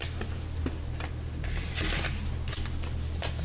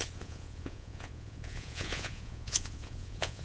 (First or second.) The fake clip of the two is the second